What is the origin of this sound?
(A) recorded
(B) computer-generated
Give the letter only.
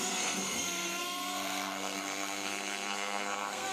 B